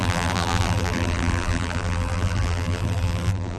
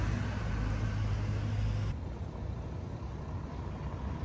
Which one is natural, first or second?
second